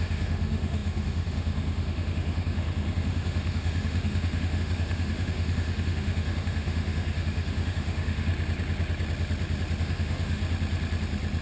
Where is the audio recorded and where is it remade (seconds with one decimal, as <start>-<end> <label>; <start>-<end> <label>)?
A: 0.0-8.3 remade; 8.3-9.8 recorded; 9.8-10.4 remade; 10.4-11.4 recorded